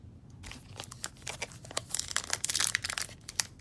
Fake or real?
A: real